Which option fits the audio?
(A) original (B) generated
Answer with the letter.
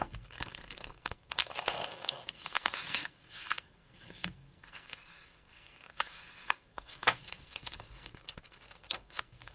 B